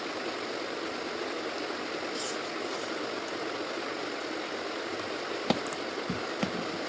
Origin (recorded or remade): recorded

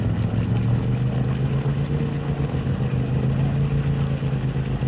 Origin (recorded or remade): recorded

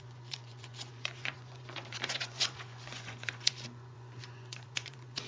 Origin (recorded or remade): remade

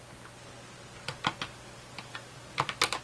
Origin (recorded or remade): recorded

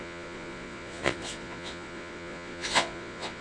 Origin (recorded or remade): remade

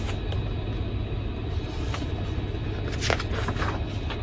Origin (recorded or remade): recorded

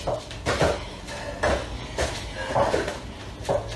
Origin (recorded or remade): recorded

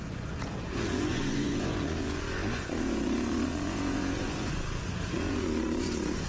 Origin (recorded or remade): remade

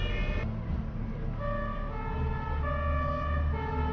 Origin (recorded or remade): recorded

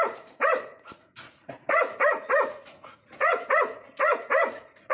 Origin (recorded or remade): remade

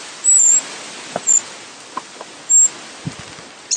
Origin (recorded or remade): recorded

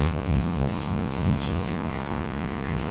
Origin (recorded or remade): remade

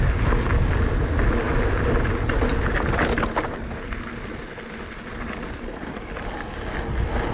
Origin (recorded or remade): recorded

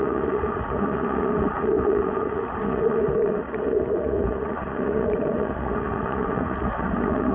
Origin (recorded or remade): remade